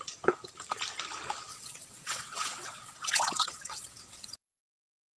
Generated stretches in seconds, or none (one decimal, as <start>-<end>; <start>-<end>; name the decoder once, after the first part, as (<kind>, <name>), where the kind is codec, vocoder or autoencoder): 1.5-4.6 (vocoder, WaveNeXt)